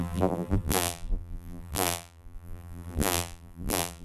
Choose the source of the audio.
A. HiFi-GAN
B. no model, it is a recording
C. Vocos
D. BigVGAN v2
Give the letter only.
D